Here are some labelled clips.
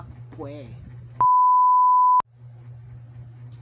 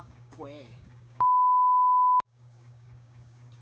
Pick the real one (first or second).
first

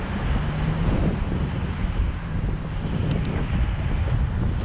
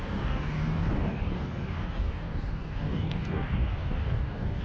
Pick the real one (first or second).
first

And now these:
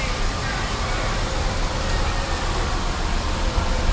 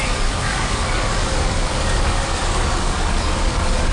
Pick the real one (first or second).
first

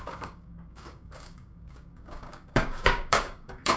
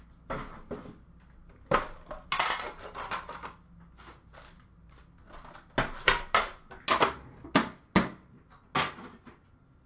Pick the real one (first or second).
second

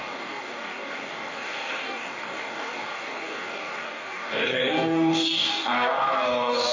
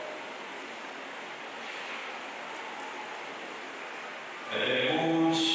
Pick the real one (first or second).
second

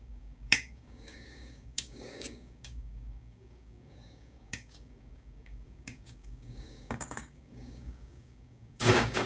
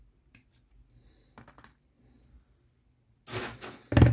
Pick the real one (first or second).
second